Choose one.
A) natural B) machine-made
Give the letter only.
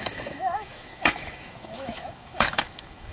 B